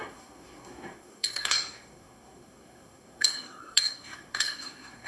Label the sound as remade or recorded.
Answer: remade